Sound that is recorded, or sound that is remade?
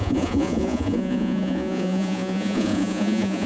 remade